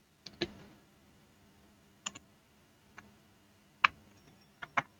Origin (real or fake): real